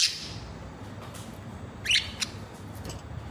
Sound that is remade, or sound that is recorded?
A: recorded